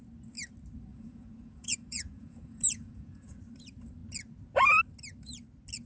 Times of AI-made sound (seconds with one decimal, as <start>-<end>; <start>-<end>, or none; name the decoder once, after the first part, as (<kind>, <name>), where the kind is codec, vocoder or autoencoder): 0.9-3.4 (vocoder, Vocos)